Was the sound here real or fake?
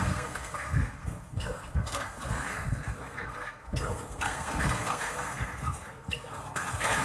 fake